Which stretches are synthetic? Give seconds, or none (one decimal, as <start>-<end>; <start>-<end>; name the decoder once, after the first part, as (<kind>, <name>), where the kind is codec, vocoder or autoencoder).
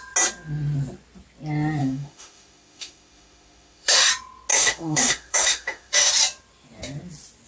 1.8-4.1 (autoencoder, DAC-VAE); 4.5-6.1